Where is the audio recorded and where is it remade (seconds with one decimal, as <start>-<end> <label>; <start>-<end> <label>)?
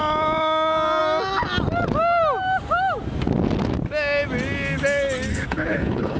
0.0-5.3 recorded; 5.3-6.2 remade